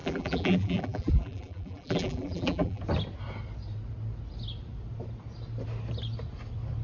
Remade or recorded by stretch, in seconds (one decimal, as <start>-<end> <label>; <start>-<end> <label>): 0.0-2.8 remade; 2.8-6.8 recorded